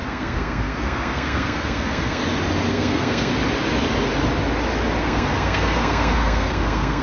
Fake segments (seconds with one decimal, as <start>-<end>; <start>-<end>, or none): 0.0-2.2; 2.7-3.3; 5.0-7.0